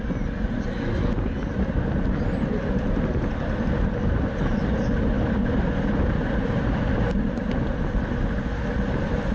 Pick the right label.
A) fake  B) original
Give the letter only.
B